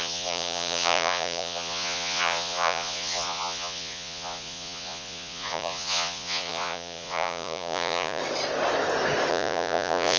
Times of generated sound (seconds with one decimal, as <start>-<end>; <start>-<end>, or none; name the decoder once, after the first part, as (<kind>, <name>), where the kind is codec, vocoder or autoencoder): 0.0-8.2 (vocoder, Vocos); 9.3-10.2